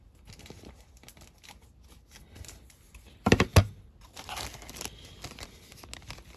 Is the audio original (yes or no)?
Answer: yes